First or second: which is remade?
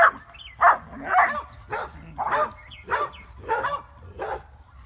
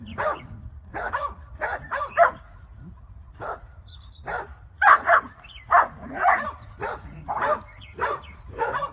second